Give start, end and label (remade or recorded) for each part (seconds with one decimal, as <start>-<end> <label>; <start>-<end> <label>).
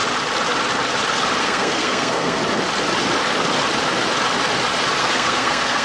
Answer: 0.0-1.4 recorded; 1.4-2.4 remade; 2.4-5.0 recorded; 5.0-5.8 remade